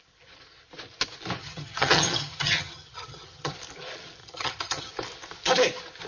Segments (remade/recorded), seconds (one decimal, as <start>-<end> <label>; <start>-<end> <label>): 0.0-1.4 recorded; 1.4-3.5 remade; 3.5-4.2 recorded; 4.2-4.9 remade; 4.9-6.1 recorded